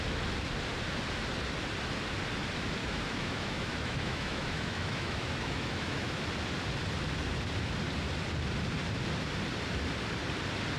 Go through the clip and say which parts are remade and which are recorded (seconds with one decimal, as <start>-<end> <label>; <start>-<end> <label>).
0.0-2.8 recorded; 2.8-6.2 remade; 6.2-10.8 recorded